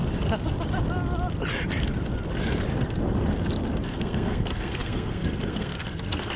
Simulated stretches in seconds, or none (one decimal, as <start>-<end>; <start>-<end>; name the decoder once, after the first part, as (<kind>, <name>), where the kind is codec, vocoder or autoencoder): 3.8-6.4 (codec, SNAC)